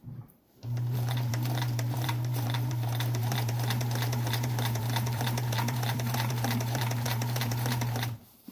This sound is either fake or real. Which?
fake